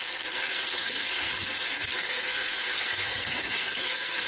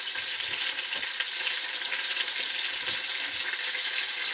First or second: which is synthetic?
first